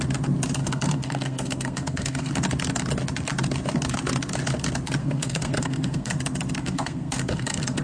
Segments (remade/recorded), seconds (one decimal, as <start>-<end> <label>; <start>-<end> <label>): 0.0-0.6 recorded; 0.6-2.3 remade; 2.3-5.0 recorded; 5.0-6.1 remade; 6.1-6.6 recorded; 6.6-7.8 remade